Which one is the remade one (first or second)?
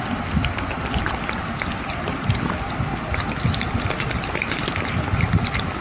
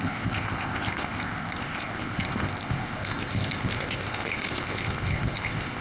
second